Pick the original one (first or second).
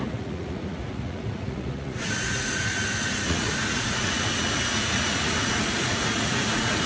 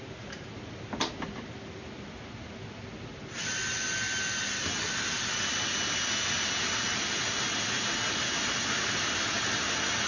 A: second